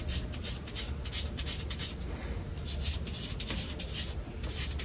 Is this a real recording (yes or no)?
yes